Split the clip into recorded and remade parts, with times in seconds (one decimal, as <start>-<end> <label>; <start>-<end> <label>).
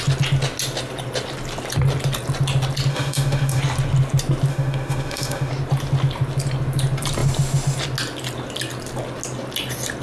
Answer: 0.0-2.9 recorded; 2.9-3.6 remade; 3.6-4.5 recorded; 4.5-5.5 remade; 5.5-10.0 recorded